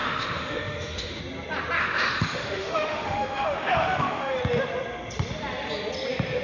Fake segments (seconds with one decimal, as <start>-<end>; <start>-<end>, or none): 0.0-1.2; 1.8-4.4